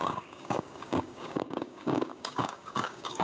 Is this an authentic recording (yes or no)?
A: no